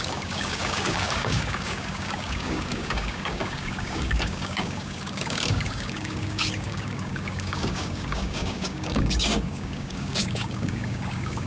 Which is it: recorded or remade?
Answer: remade